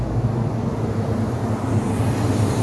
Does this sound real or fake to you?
real